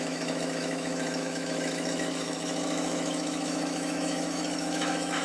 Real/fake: fake